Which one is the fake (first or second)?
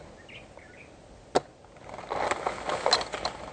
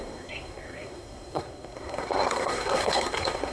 second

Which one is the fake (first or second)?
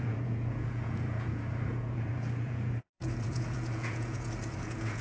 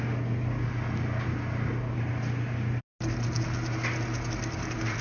first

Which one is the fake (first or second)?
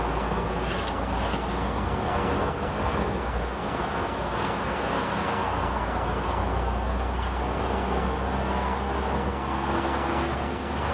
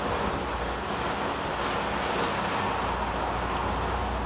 first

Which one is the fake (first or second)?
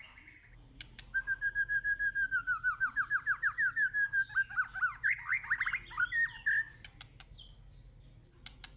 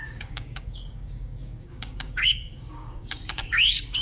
second